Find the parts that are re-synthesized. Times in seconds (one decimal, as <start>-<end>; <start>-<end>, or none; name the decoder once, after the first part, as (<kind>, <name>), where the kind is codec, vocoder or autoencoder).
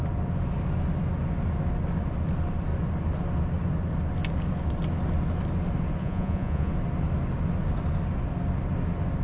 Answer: 6.0-6.7 (vocoder, Vocos)